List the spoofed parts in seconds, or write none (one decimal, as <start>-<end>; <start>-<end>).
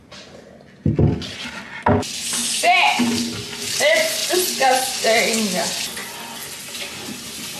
none